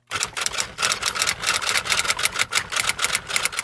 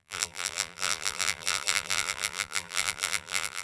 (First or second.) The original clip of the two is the first